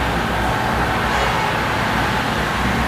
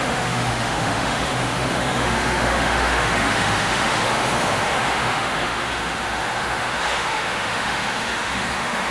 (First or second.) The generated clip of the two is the second